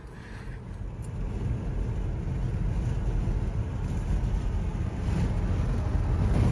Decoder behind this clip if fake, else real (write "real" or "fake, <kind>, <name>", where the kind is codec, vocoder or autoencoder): real